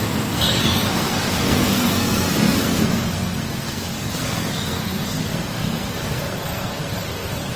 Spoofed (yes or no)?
yes